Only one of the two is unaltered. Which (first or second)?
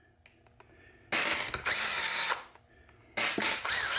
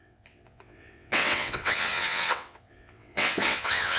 first